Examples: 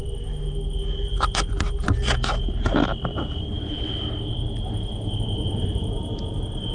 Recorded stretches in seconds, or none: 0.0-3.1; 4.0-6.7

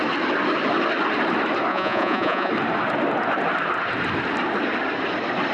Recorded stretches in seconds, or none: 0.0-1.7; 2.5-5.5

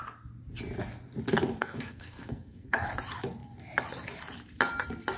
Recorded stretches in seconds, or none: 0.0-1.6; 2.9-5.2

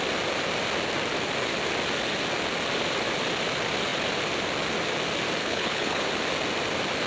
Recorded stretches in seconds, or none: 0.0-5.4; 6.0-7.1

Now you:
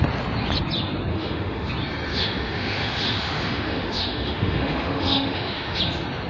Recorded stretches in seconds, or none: 0.0-1.1; 1.7-2.1; 5.8-6.3

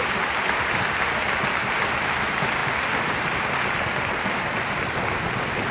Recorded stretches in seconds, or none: 0.0-5.7

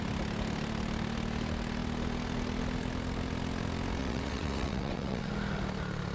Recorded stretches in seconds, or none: 0.0-4.0; 5.3-6.1

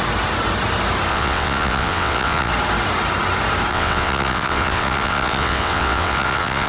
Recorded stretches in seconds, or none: 0.0-1.1; 2.5-3.7